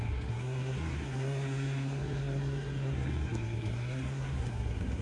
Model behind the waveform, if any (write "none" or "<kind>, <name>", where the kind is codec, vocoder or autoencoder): codec, SNAC